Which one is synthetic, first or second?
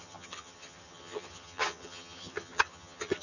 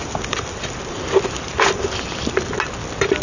first